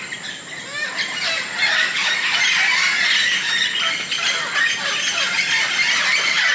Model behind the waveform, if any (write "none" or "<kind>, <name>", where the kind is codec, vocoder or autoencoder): none